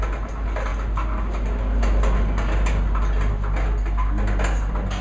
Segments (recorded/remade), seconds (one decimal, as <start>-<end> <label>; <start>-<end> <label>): 0.0-5.0 recorded